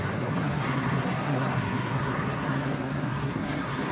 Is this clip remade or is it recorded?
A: remade